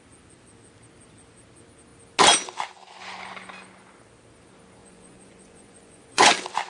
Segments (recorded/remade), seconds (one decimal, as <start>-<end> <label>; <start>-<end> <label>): 0.0-4.8 recorded; 4.8-6.3 remade; 6.3-6.7 recorded